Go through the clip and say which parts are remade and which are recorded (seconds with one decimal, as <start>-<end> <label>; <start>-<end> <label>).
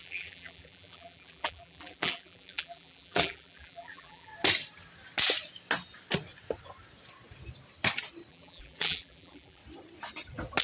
0.0-4.3 remade; 4.3-8.3 recorded; 8.3-9.6 remade; 9.6-10.6 recorded